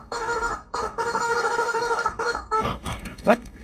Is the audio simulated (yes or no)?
yes